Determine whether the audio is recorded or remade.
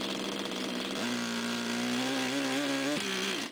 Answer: recorded